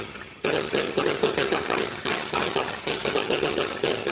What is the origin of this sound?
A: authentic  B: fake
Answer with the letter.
B